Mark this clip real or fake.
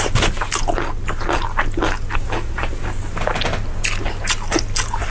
real